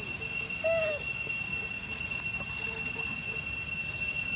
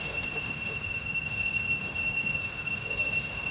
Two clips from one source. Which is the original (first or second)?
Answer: first